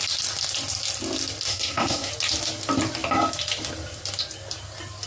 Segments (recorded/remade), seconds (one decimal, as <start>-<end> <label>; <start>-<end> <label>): 0.0-1.5 recorded; 1.5-2.1 remade; 2.1-5.1 recorded